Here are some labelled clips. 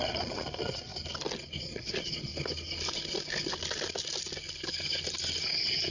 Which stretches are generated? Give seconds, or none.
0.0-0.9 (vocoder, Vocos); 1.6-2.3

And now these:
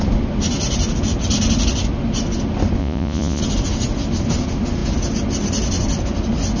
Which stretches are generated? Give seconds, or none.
2.8-3.4 (vocoder, Vocos)